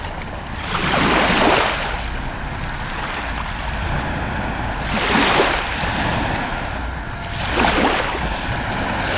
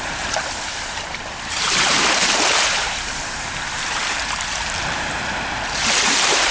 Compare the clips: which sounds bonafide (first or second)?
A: first